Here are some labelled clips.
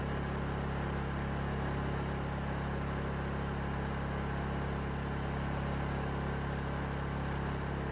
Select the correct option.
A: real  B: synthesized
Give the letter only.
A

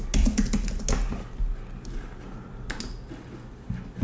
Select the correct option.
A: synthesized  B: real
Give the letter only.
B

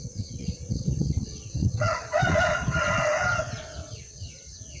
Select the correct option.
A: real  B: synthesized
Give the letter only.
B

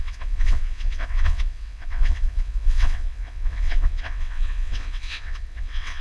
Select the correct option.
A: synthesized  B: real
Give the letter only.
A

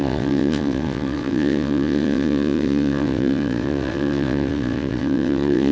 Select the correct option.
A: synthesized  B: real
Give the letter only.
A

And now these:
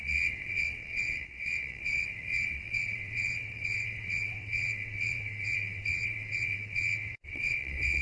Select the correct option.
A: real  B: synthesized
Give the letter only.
B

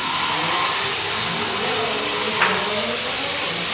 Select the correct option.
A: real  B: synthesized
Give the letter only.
A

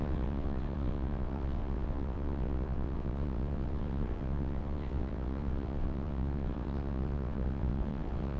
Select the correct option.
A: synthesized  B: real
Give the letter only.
A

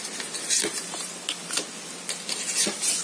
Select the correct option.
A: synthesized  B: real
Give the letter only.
B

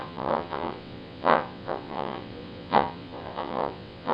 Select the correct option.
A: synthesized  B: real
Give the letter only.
A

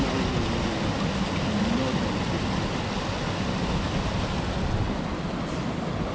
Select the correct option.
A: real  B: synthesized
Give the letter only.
A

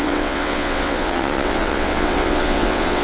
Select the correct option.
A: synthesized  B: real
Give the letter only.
A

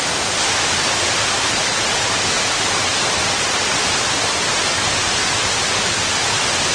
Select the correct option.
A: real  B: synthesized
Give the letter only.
A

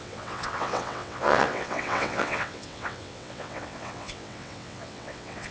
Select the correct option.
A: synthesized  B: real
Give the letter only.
A